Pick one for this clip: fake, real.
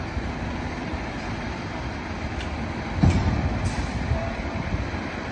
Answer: real